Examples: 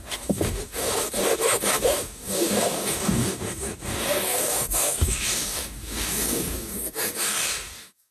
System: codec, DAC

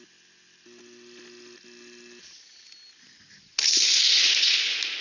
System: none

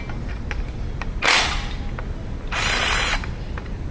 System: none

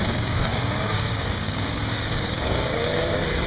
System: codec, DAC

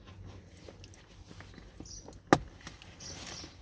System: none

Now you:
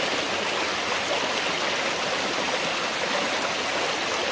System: none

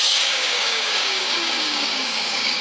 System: codec, DAC